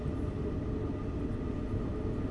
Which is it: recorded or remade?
recorded